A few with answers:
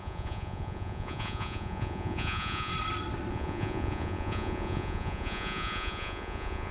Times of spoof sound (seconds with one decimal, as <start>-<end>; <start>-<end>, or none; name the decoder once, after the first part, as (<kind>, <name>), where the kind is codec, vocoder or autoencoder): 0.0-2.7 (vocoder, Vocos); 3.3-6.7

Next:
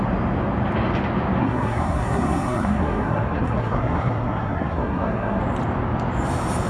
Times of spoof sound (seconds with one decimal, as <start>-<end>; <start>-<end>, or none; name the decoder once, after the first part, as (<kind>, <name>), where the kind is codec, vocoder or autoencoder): 1.4-5.4 (codec, SNAC)

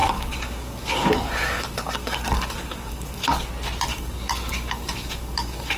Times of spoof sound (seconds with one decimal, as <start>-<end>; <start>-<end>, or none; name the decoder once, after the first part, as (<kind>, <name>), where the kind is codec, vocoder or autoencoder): 0.0-3.5 (codec, DAC); 3.9-5.8

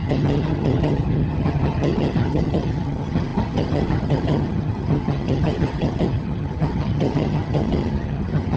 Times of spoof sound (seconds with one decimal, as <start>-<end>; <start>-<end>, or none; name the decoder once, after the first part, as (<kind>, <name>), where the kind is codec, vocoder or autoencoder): 0.0-8.6 (vocoder, HiFi-GAN)

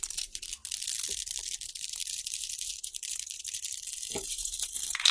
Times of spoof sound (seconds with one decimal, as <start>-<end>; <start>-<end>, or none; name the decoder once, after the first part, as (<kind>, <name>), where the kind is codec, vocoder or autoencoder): 0.0-0.6 (vocoder, BigVGAN v2); 1.7-5.1

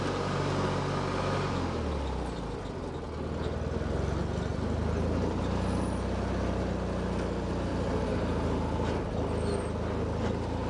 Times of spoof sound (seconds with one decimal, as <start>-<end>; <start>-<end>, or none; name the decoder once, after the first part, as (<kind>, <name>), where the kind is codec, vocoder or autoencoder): 4.5-5.4 (vocoder, BigVGAN v2); 7.7-9.0